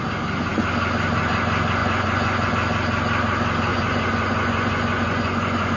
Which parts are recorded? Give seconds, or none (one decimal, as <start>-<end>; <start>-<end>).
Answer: 0.0-1.8; 2.5-3.7